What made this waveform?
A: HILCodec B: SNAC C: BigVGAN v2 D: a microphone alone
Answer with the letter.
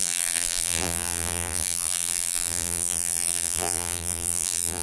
C